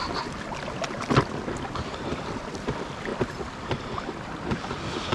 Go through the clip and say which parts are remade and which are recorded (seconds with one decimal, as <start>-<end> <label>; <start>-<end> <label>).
0.0-5.1 recorded